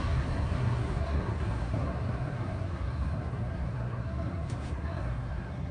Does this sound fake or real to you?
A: fake